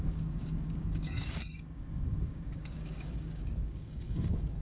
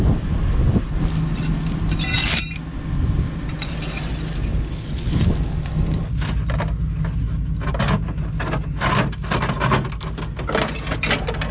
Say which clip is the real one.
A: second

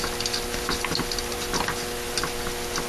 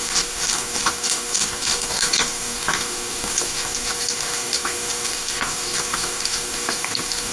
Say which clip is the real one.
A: first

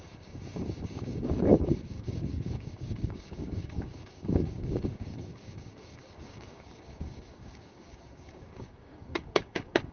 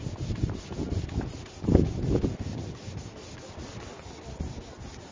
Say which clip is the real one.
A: second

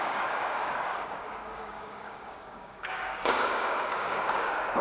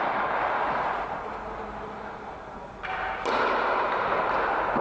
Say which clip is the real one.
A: second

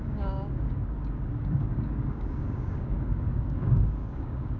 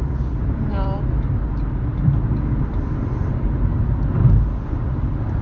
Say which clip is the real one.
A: second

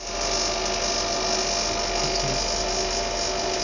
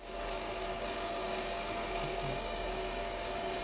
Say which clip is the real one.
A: first